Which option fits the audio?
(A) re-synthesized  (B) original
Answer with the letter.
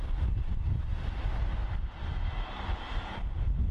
B